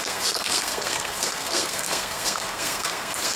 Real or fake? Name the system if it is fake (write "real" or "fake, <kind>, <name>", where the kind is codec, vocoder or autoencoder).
fake, codec, SNAC